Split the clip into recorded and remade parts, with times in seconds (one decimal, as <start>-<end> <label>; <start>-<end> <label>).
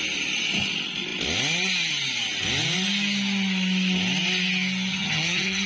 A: 0.0-4.9 recorded; 4.9-5.7 remade